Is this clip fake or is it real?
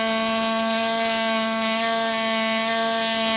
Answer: real